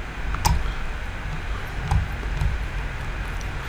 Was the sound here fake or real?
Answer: real